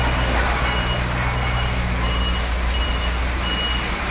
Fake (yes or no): no